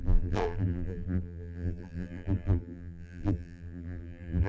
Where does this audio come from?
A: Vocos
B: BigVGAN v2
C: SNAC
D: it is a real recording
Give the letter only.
B